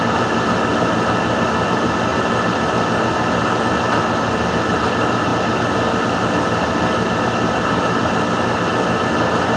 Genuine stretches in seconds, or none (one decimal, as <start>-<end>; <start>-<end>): 0.0-9.6